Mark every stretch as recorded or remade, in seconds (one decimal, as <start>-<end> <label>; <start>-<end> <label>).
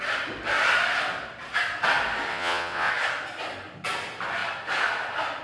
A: 0.0-2.3 recorded; 2.3-2.9 remade; 2.9-5.4 recorded